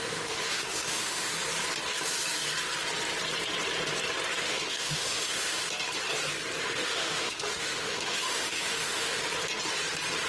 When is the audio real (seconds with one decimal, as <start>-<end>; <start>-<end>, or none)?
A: 1.3-4.4; 5.6-6.6; 9.2-10.3